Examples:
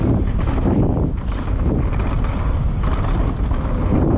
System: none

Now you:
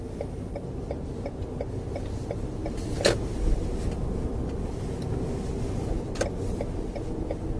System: none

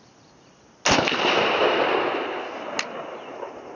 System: none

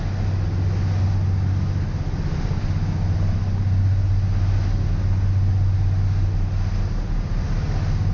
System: none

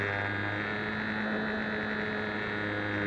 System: none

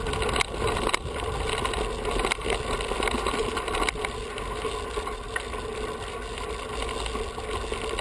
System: none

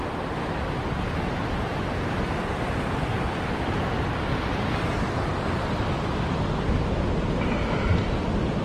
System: none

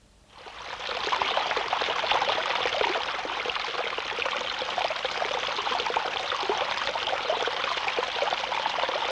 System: none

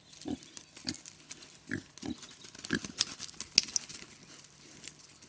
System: none